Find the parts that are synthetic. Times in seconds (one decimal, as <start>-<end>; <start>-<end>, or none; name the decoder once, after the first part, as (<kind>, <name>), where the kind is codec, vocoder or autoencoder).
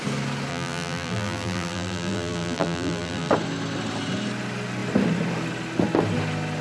0.5-3.3 (vocoder, BigVGAN v2)